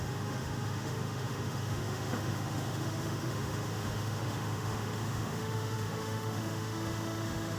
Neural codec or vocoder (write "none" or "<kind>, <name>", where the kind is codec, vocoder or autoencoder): autoencoder, DAC-VAE